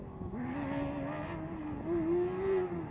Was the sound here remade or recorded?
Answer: recorded